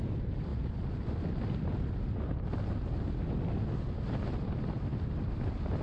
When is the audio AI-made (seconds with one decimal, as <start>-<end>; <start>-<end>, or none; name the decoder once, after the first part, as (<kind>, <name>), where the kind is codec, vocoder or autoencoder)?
none